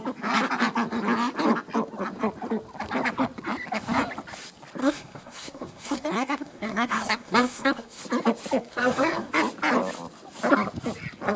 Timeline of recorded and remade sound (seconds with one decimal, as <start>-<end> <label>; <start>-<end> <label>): 0.0-4.8 recorded; 4.8-8.0 remade; 8.0-8.6 recorded; 8.6-9.3 remade; 9.3-11.4 recorded